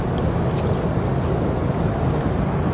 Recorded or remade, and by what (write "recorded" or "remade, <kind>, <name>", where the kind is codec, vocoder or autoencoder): recorded